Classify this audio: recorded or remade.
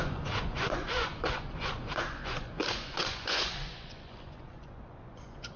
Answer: remade